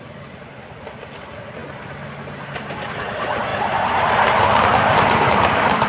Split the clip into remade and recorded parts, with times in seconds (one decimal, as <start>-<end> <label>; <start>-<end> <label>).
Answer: 0.0-5.9 recorded